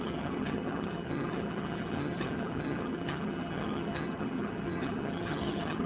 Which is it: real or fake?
fake